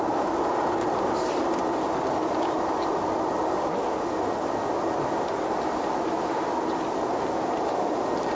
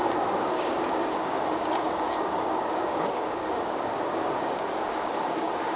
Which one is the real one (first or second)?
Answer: first